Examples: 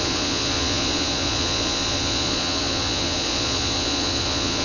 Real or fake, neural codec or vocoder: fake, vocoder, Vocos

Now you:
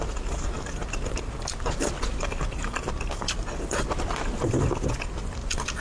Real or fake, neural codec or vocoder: real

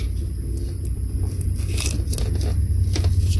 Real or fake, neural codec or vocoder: real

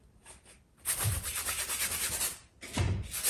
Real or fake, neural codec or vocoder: real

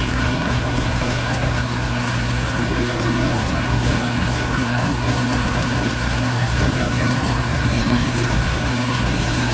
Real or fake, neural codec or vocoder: fake, codec, SNAC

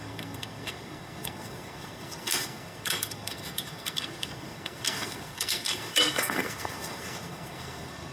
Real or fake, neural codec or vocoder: fake, codec, SNAC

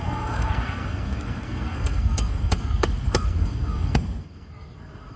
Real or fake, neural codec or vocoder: fake, codec, SNAC